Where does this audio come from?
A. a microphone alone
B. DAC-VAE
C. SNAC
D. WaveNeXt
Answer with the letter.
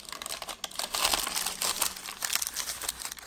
A